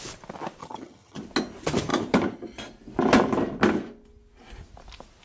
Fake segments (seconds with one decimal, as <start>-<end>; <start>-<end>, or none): 0.6-1.2